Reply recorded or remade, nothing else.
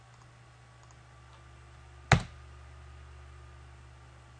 recorded